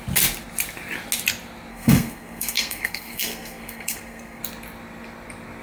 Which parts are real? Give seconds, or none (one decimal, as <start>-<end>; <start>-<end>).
0.0-1.7; 4.4-5.6